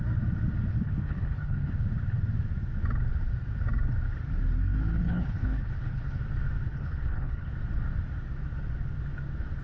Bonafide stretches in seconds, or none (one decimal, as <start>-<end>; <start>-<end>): 0.0-0.7; 1.7-5.0; 6.2-6.7; 7.5-9.6

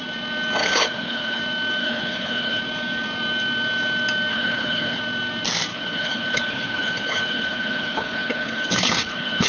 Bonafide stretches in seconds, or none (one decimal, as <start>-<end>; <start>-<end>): 0.0-0.6; 1.4-1.8; 2.6-4.3; 5.0-5.7